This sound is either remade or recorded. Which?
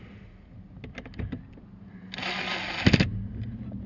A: recorded